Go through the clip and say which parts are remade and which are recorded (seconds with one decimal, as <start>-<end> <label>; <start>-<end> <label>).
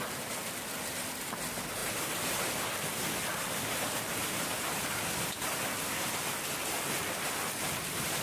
0.0-1.8 recorded; 1.8-2.4 remade; 2.4-3.3 recorded; 3.3-5.0 remade; 5.0-8.2 recorded